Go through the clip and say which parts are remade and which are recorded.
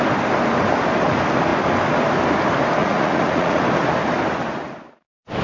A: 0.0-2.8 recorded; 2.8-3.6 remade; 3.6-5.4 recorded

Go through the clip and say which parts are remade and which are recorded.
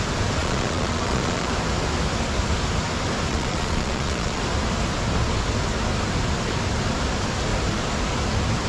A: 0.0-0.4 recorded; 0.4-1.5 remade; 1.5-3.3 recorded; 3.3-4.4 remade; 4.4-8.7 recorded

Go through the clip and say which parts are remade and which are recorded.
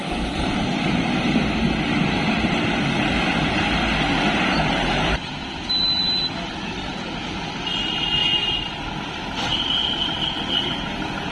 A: 0.0-6.9 remade; 6.9-7.5 recorded; 7.5-8.2 remade; 8.2-9.0 recorded; 9.0-11.3 remade